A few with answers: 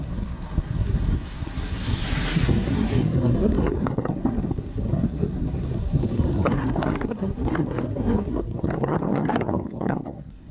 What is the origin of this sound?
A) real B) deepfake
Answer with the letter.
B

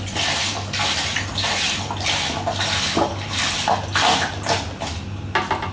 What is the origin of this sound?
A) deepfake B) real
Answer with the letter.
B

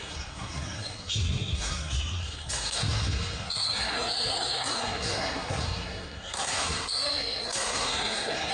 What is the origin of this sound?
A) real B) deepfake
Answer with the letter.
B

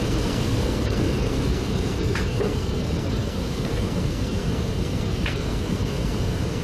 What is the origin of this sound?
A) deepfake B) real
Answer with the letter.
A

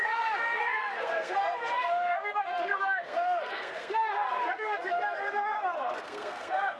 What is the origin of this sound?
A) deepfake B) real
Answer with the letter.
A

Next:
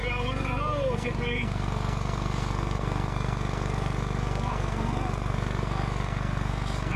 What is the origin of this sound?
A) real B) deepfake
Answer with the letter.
B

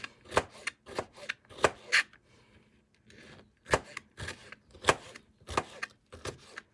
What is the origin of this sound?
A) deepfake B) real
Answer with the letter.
B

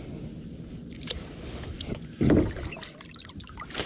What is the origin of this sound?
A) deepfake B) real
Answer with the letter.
B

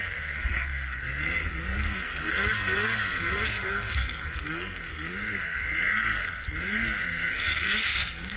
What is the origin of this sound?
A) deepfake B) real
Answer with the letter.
A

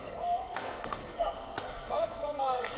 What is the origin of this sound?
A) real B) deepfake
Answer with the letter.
B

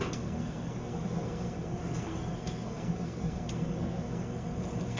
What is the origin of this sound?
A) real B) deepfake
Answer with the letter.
B